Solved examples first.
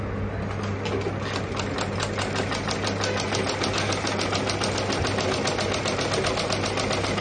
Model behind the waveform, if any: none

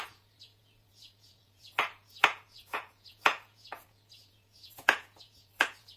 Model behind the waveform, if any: vocoder, Vocos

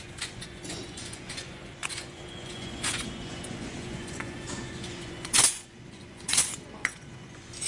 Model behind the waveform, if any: vocoder, Vocos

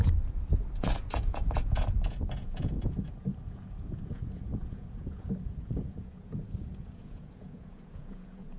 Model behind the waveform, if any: vocoder, Vocos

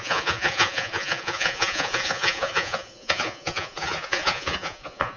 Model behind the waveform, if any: vocoder, Vocos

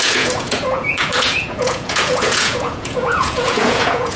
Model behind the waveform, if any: vocoder, Vocos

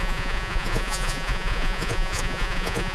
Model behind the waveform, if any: vocoder, Vocos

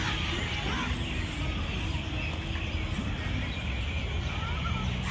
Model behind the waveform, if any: none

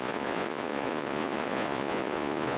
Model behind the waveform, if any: vocoder, Vocos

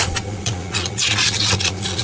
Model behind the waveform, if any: vocoder, Vocos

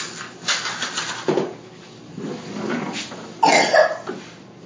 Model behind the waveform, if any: none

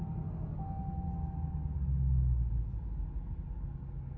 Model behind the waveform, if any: none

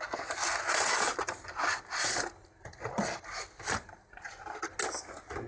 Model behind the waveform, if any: none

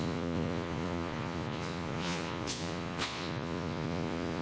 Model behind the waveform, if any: vocoder, Vocos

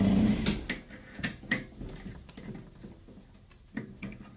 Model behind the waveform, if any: none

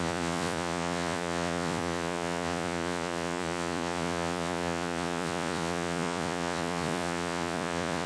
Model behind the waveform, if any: vocoder, Vocos